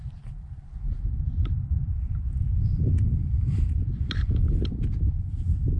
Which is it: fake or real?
real